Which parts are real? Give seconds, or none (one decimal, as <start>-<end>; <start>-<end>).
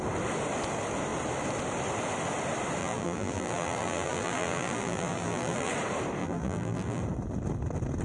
0.0-2.8; 5.7-6.2; 7.0-8.0